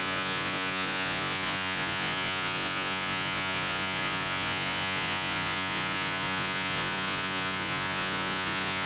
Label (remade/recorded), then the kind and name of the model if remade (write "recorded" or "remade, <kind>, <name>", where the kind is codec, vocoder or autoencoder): remade, vocoder, Vocos